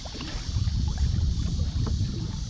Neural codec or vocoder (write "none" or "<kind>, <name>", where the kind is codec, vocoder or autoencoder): vocoder, BigVGAN v2